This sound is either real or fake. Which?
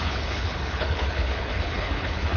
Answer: fake